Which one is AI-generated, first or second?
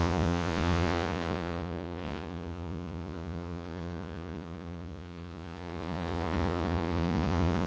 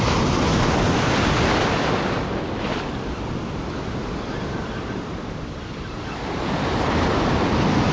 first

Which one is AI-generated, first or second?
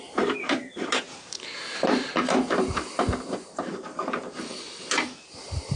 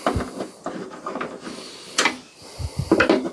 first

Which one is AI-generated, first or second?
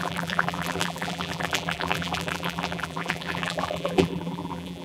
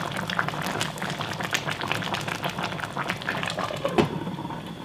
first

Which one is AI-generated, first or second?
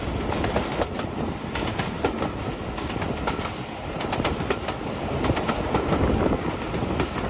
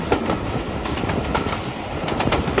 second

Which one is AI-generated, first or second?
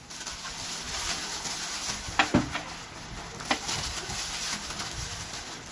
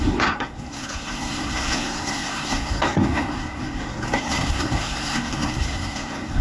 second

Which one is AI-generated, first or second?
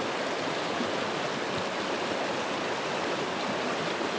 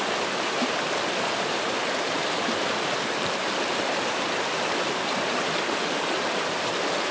second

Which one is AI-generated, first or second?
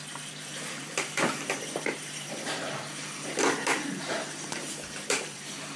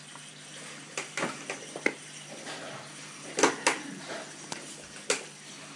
first